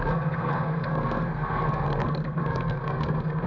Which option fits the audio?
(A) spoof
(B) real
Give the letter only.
A